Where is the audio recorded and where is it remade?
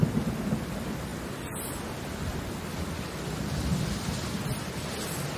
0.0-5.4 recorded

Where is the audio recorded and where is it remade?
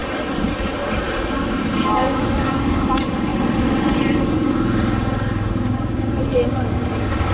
0.0-1.8 recorded; 1.8-3.3 remade; 3.3-4.2 recorded; 4.2-7.3 remade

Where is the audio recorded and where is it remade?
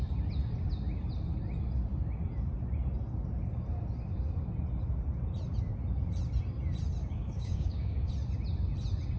0.0-7.0 recorded; 7.0-8.1 remade; 8.1-9.2 recorded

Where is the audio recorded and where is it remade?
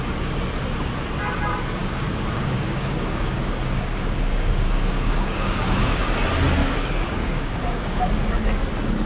0.0-1.8 recorded; 1.8-6.0 remade; 6.0-6.6 recorded; 6.6-8.0 remade; 8.0-9.1 recorded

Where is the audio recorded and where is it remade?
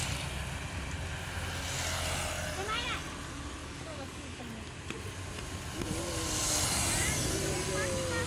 0.0-3.6 recorded; 3.6-4.4 remade; 4.4-8.3 recorded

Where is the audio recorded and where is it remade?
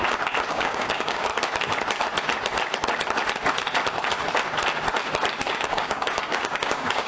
0.0-0.5 recorded; 0.5-1.3 remade; 1.3-5.5 recorded; 5.5-7.1 remade